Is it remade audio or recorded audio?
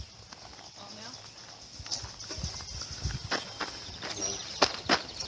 recorded